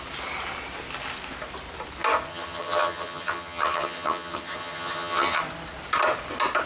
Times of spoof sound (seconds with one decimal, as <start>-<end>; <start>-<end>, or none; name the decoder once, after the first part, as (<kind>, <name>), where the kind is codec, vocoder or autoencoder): 2.3-5.4 (vocoder, HiFi-GAN)